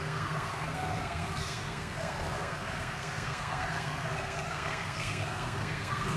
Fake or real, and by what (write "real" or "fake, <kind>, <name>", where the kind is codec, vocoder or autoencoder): fake, codec, SNAC